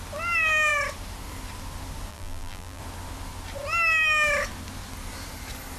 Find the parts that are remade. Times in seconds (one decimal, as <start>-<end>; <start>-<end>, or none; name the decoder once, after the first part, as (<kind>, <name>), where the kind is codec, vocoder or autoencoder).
2.1-2.8 (vocoder, BigVGAN v2)